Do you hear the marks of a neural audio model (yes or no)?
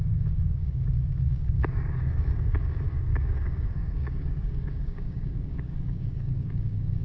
yes